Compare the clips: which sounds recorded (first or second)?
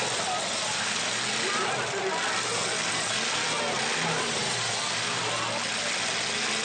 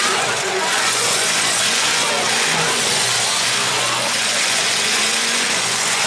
first